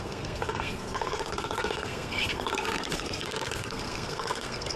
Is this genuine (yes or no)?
no